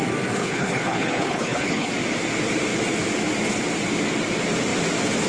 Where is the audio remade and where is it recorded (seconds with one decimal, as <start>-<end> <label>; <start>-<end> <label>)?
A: 0.0-0.4 recorded; 0.4-1.9 remade; 1.9-5.3 recorded

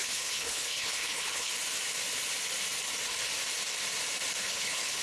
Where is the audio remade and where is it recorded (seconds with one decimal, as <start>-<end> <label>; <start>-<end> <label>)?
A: 0.0-1.5 remade; 1.5-4.4 recorded; 4.4-5.0 remade